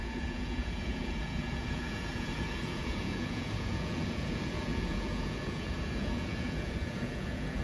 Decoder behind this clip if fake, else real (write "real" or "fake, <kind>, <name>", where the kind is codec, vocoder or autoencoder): fake, vocoder, Vocos